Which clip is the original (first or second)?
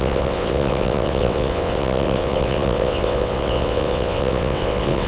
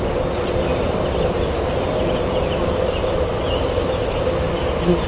second